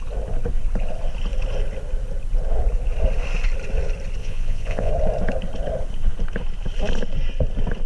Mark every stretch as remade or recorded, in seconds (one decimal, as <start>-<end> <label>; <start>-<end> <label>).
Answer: 0.0-4.2 recorded; 4.2-4.9 remade; 4.9-7.9 recorded